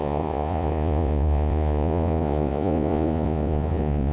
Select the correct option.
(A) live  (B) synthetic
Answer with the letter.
B